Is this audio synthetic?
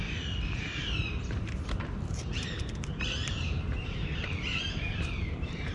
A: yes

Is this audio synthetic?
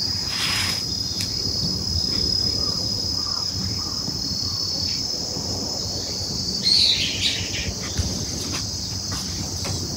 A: no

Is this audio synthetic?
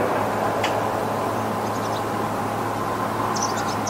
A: no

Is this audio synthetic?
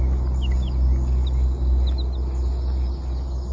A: no